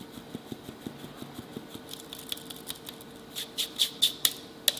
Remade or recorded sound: recorded